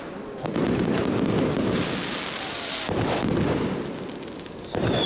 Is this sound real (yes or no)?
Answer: yes